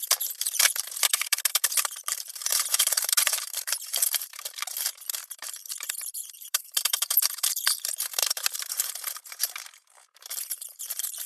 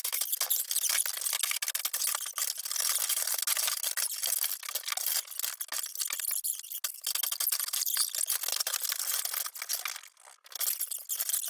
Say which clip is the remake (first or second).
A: first